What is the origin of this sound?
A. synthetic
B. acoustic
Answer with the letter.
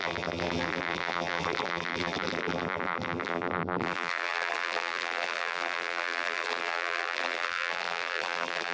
A